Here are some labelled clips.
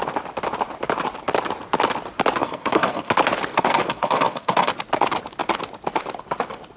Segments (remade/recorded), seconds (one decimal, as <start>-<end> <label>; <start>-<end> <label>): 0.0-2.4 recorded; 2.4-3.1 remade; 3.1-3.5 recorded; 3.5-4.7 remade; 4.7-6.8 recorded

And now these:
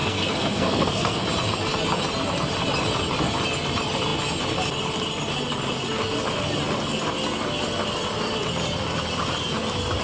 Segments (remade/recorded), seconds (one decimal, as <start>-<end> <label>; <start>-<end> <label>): 0.0-1.2 remade; 1.2-10.0 recorded

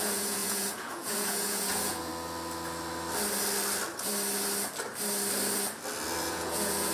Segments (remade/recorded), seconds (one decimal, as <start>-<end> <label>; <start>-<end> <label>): 0.0-2.1 remade; 2.1-6.2 recorded; 6.2-6.9 remade